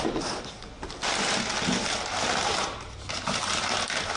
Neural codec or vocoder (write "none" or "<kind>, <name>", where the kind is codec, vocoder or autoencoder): none